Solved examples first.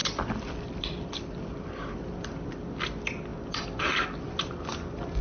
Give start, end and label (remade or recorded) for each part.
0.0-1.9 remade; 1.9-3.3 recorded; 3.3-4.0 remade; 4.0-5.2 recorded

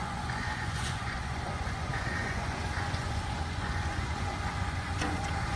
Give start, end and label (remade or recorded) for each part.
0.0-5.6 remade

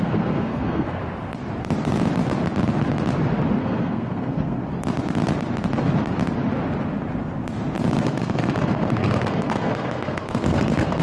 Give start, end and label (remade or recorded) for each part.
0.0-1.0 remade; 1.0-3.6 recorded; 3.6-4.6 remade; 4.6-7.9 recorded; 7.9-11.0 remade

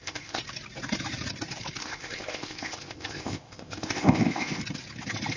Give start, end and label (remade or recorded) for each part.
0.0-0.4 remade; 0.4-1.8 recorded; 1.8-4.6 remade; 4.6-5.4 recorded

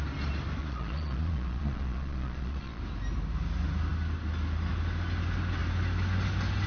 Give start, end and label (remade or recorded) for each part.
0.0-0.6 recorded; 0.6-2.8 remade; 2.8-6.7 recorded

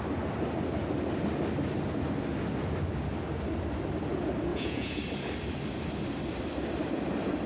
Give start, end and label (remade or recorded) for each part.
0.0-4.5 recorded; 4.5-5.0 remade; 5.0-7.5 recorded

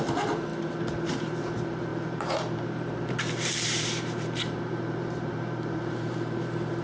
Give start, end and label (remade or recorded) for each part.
0.0-0.5 remade; 0.5-1.1 recorded; 1.1-6.8 remade

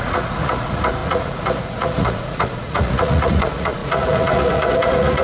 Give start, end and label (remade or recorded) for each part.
0.0-5.2 remade